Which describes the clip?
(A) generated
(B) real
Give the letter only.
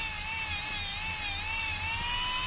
B